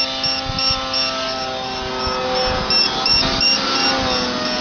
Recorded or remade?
recorded